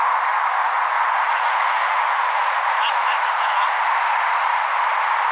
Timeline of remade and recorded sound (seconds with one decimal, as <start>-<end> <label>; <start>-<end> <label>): 0.0-0.6 recorded; 0.6-3.8 remade; 3.8-5.3 recorded